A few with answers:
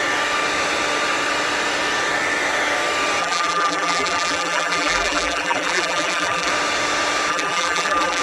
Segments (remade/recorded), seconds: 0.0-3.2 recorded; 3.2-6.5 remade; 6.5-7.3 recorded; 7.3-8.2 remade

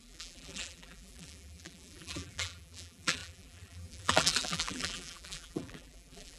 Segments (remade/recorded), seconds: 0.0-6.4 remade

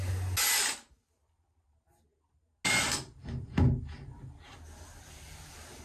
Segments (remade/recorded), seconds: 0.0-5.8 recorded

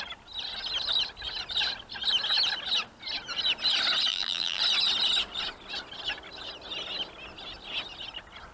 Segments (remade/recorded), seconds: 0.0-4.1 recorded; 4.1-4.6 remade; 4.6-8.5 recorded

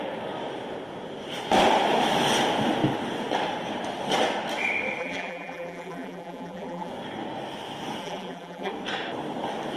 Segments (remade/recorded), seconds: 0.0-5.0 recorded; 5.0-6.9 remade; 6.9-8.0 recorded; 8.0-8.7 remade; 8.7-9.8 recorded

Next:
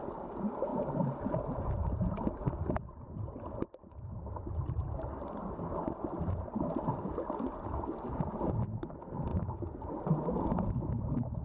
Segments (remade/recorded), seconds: 0.0-0.7 recorded; 0.7-2.3 remade; 2.3-4.6 recorded; 4.6-6.6 remade; 6.6-11.4 recorded

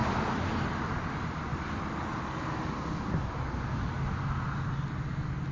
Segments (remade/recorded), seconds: 0.0-5.5 recorded